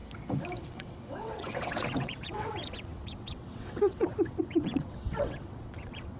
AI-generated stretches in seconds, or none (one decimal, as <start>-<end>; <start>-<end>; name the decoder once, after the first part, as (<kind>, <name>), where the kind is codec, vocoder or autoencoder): 0.7-6.2 (vocoder, WaveNeXt)